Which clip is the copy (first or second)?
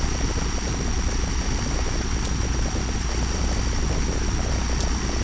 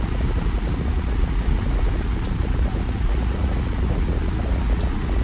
second